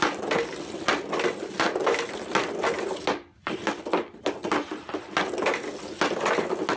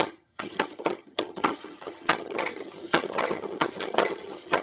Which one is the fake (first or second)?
second